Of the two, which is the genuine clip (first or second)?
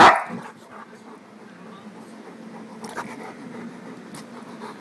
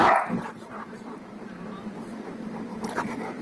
first